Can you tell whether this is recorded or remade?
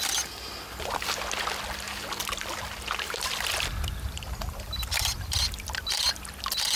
recorded